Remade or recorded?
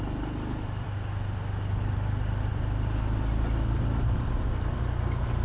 recorded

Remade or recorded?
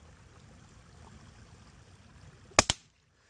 recorded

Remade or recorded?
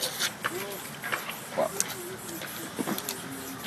recorded